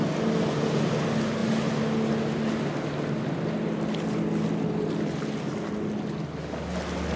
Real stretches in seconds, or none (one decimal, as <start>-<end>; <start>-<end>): 0.0-7.2